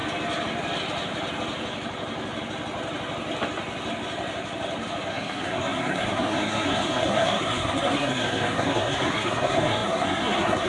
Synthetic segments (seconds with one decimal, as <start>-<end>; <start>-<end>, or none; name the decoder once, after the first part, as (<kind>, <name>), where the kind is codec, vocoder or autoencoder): 5.1-10.7 (codec, SNAC)